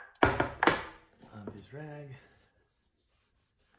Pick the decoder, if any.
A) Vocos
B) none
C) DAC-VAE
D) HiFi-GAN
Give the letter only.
B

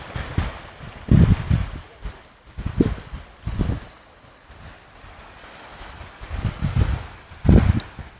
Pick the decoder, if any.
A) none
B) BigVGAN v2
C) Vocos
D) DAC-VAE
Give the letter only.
A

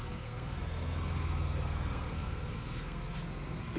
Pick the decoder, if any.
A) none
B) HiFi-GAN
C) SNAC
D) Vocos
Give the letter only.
C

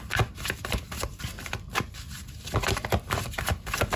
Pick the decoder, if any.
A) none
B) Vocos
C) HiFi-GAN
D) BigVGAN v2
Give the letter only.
A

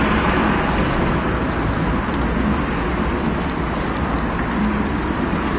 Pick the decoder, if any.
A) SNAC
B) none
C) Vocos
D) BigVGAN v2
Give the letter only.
B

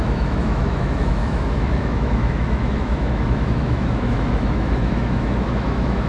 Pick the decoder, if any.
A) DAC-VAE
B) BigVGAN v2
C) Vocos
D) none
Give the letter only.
A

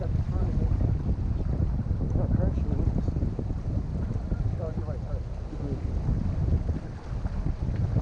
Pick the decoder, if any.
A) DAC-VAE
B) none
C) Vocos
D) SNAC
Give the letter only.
B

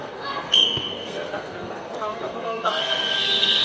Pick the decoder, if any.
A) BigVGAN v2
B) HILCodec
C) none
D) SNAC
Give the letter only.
D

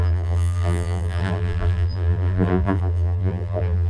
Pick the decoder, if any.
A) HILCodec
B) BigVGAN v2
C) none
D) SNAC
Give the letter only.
B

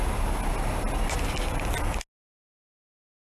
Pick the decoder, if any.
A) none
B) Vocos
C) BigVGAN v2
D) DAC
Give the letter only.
A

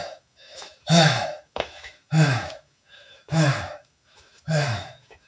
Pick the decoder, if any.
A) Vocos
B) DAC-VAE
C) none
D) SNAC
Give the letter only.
B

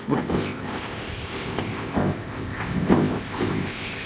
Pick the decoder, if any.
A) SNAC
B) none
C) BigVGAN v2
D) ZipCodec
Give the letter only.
D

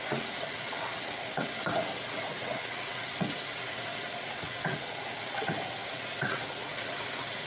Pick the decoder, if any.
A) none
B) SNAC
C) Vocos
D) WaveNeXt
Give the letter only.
D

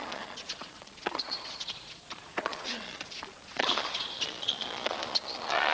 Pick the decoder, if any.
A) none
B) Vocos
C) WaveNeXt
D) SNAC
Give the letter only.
B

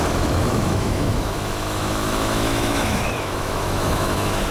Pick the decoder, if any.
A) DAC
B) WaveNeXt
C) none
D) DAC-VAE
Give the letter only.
D